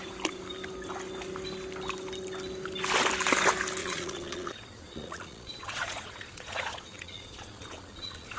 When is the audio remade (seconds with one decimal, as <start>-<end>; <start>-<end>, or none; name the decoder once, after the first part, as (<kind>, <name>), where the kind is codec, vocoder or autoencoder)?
3.8-8.4 (vocoder, Vocos)